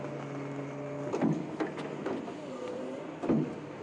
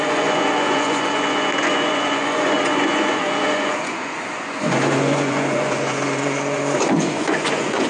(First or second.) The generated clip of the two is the second